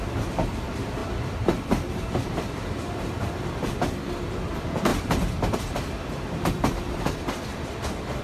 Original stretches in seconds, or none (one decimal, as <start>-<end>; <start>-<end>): none